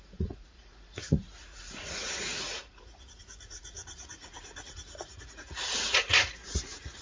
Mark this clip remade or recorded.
remade